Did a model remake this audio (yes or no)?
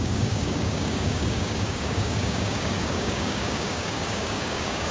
yes